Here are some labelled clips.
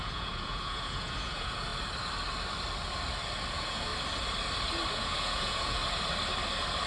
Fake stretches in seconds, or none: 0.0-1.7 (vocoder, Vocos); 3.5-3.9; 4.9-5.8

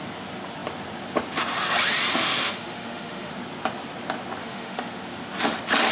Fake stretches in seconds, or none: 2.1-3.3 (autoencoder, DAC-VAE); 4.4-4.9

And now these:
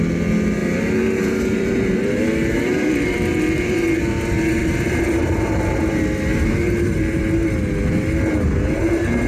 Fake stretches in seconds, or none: 0.6-4.0 (vocoder, BigVGAN v2); 4.6-5.6; 6.3-7.2